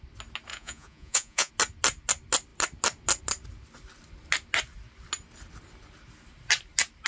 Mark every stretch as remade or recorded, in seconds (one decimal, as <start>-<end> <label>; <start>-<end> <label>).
0.0-0.5 recorded; 0.5-1.5 remade; 1.5-7.1 recorded